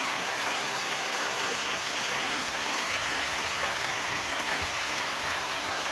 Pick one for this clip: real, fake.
fake